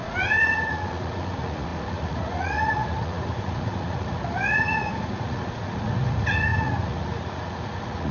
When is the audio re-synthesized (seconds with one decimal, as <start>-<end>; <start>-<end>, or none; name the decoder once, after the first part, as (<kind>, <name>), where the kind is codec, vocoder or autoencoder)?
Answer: 0.0-8.1 (vocoder, Vocos)

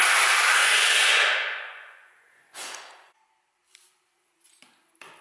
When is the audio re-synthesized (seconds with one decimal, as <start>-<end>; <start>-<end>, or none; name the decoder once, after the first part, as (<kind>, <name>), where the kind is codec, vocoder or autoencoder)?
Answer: 0.6-3.1 (vocoder, Vocos)

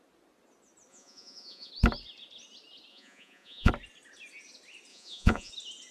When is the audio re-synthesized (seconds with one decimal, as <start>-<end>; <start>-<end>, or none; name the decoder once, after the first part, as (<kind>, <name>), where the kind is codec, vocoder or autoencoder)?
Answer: 0.9-1.7 (vocoder, Vocos); 2.9-3.7; 4.9-5.5

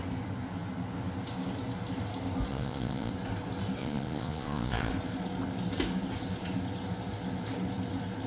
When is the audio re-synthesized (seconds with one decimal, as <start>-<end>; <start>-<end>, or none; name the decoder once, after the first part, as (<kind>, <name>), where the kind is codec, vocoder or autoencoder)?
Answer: 2.5-3.1 (vocoder, Vocos); 3.8-4.9

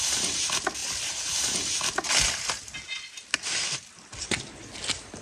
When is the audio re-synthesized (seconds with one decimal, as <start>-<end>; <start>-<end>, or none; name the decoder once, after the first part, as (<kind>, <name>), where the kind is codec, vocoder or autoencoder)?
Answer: none